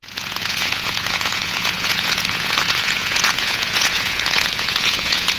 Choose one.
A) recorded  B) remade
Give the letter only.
B